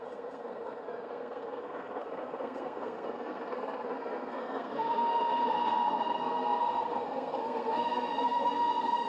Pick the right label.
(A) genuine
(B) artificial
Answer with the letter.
B